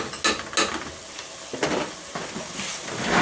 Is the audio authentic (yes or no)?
yes